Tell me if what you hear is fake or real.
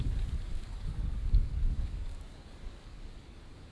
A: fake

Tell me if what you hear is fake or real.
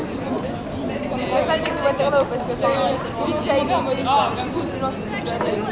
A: real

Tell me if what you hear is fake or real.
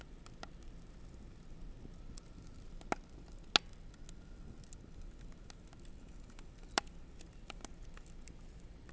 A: real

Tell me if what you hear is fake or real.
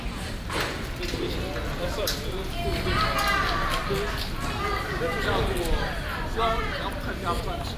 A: real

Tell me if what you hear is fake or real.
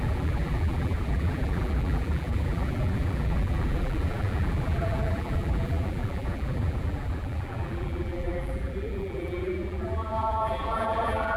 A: fake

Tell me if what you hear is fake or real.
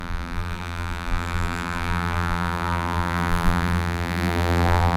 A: fake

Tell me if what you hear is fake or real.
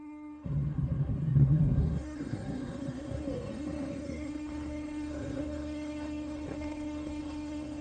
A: fake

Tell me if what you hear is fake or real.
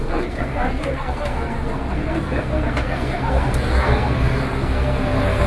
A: fake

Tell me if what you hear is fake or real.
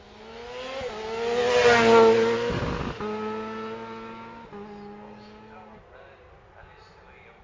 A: real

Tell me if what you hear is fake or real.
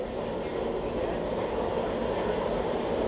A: real